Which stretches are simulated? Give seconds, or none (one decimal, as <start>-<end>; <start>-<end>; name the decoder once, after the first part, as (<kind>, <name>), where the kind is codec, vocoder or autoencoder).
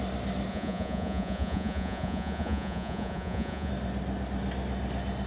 0.5-3.7 (vocoder, Vocos)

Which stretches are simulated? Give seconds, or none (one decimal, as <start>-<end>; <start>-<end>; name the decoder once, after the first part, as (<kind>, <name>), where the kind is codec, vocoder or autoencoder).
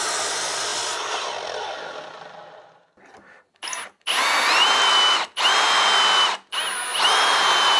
none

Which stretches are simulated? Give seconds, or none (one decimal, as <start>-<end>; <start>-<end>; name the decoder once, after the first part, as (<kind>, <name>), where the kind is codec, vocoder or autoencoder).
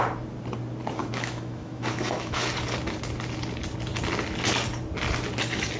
1.0-2.5 (autoencoder, DAC-VAE)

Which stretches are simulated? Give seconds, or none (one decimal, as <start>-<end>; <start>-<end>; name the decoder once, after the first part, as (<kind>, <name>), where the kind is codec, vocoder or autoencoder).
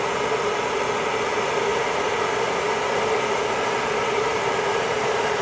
none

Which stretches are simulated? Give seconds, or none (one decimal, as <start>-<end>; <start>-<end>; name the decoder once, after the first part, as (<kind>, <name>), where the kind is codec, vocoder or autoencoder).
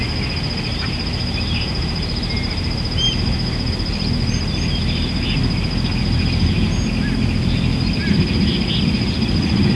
0.7-3.7 (vocoder, BigVGAN v2)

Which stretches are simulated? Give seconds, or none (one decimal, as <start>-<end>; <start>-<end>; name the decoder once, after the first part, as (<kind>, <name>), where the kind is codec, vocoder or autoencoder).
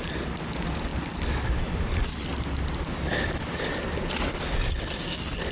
0.0-0.9 (vocoder, BigVGAN v2); 1.6-2.1; 3.1-5.5